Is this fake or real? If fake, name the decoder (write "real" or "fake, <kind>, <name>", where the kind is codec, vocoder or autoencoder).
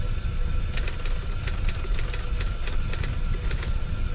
real